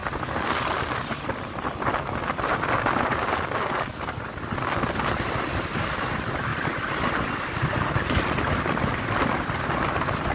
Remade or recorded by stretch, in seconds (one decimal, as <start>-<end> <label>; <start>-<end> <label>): 0.0-10.3 recorded